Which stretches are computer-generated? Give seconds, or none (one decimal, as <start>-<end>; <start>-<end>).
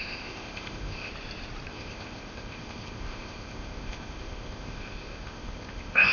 0.0-1.1; 1.7-6.1